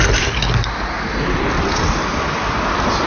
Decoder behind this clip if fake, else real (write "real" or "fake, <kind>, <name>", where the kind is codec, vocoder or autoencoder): fake, vocoder, BigVGAN v2